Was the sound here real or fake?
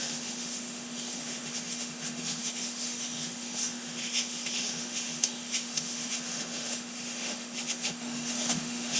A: fake